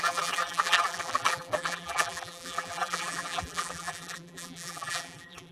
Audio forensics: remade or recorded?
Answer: remade